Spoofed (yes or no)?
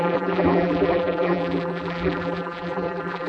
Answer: yes